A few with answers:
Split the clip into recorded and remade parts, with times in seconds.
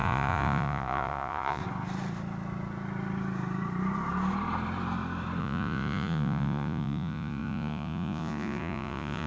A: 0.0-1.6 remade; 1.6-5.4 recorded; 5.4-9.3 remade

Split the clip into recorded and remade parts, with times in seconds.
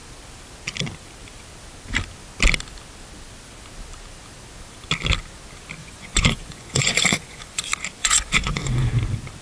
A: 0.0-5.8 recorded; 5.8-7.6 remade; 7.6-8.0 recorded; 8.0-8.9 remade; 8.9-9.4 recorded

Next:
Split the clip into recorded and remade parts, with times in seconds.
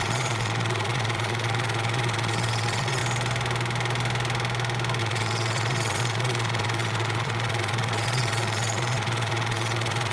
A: 0.0-3.0 remade; 3.0-5.0 recorded; 5.0-10.1 remade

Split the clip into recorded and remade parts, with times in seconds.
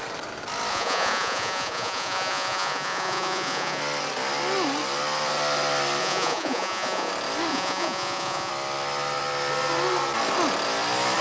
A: 0.0-0.7 recorded; 0.7-3.8 remade; 3.8-6.0 recorded; 6.0-7.1 remade; 7.1-7.5 recorded; 7.5-8.5 remade; 8.5-11.2 recorded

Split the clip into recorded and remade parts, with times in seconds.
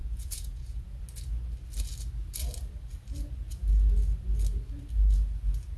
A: 0.0-1.0 remade; 1.0-5.8 recorded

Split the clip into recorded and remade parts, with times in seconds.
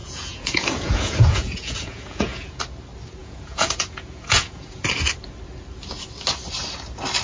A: 0.0-2.6 remade; 2.6-3.2 recorded; 3.2-4.8 remade; 4.8-7.2 recorded